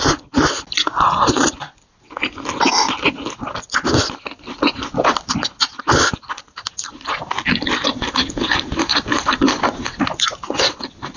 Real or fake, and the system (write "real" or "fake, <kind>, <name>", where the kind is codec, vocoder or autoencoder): real